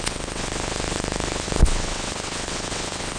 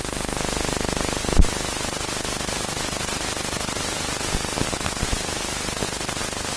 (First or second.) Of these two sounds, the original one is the second